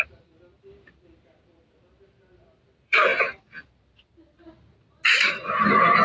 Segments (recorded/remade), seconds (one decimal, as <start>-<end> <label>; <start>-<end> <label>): 0.0-3.1 remade; 3.1-5.5 recorded; 5.5-6.0 remade